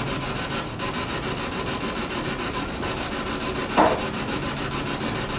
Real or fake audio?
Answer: real